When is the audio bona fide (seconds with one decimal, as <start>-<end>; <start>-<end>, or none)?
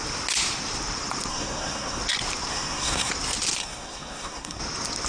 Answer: 0.0-1.3; 2.0-2.5; 3.1-3.6; 4.6-5.1